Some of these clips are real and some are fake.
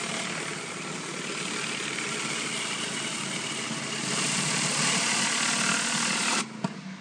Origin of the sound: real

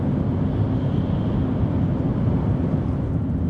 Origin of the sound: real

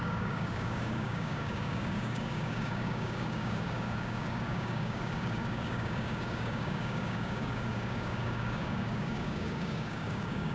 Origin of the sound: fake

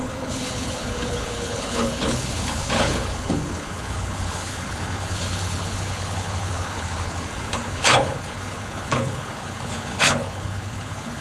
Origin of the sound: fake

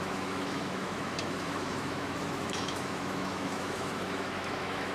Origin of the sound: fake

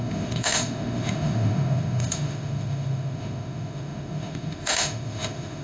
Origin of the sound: fake